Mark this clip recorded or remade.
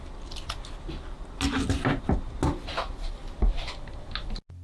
recorded